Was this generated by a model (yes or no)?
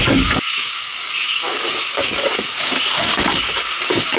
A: yes